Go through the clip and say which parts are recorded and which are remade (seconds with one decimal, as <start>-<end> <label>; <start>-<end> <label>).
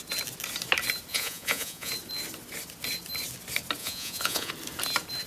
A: 0.0-1.1 recorded; 1.1-1.9 remade; 1.9-3.8 recorded; 3.8-4.5 remade; 4.5-5.3 recorded